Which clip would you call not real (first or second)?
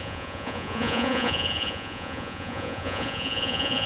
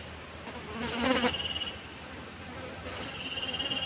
first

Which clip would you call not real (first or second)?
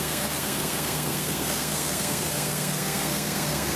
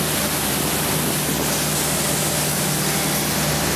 first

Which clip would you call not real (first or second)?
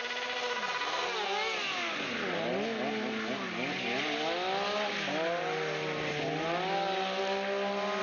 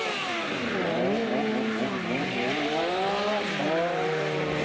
second